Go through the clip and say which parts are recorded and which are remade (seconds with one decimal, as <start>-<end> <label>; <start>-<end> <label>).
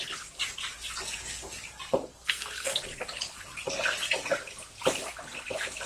0.0-2.1 recorded; 2.1-2.8 remade; 2.8-5.9 recorded